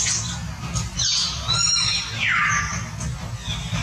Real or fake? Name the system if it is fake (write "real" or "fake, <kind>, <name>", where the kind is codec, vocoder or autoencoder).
real